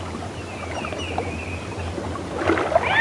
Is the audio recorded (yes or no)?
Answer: yes